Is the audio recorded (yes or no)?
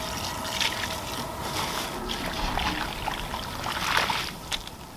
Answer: yes